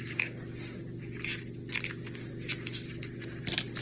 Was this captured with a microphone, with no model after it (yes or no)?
yes